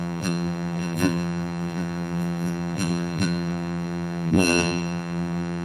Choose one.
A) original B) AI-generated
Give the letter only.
B